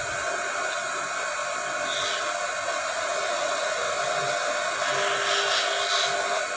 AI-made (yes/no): no